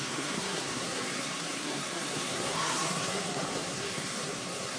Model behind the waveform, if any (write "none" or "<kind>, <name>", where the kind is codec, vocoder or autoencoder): codec, SNAC